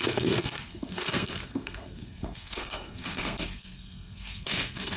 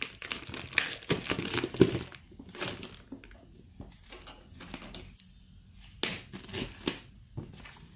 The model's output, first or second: first